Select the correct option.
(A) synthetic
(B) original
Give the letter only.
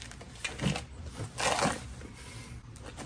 B